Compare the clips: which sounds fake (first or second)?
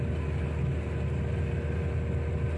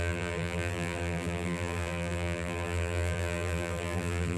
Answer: second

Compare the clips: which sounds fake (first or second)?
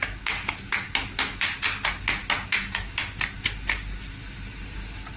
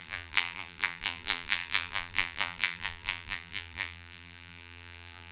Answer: second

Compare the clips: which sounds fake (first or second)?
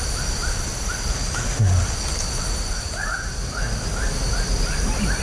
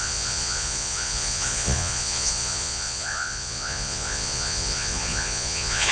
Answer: second